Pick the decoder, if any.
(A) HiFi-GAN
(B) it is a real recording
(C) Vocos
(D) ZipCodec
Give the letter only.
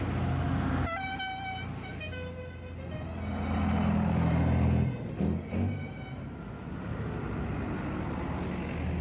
B